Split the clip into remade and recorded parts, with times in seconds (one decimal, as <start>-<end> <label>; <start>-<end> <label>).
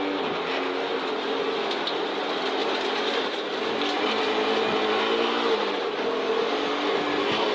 0.0-7.5 recorded